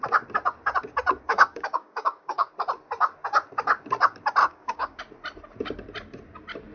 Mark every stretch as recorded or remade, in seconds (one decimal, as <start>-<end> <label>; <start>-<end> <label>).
0.0-1.3 recorded; 1.3-2.5 remade; 2.5-4.4 recorded; 4.4-5.0 remade; 5.0-6.7 recorded